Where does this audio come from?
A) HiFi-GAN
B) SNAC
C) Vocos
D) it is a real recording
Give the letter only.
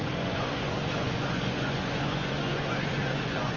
C